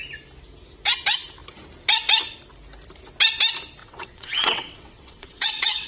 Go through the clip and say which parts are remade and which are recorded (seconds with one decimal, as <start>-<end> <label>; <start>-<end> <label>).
0.0-3.8 recorded; 3.8-5.9 remade